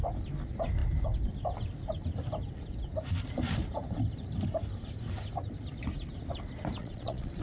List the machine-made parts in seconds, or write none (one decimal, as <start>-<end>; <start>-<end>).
6.8-7.4

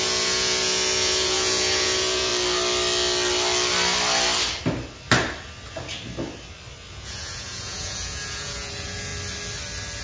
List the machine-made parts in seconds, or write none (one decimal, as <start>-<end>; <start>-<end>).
0.0-2.3; 6.9-9.1

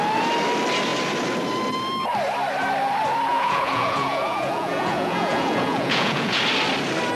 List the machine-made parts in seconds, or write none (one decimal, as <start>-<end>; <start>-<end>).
3.3-6.4

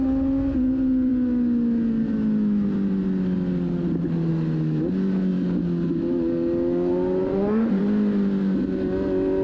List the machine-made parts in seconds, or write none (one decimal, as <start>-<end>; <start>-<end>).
7.2-7.8